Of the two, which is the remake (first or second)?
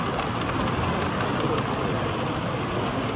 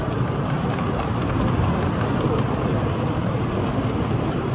second